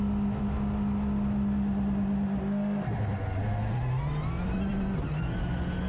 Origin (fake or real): real